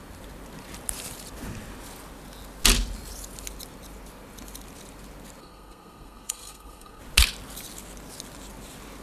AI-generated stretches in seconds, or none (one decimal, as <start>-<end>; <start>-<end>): 5.4-7.0